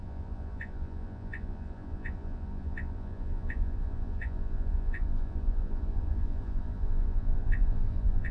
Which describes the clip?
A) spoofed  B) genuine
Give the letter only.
A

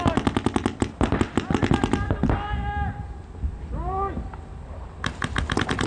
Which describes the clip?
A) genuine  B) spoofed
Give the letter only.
A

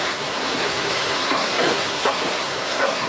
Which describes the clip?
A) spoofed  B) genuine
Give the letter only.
A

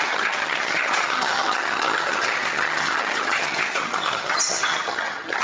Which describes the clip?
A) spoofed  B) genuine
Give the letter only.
A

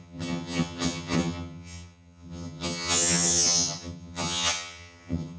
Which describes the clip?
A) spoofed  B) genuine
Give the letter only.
A